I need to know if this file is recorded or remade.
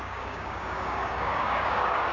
remade